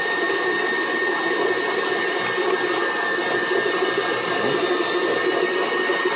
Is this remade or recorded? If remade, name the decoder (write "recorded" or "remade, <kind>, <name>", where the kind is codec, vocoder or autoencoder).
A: recorded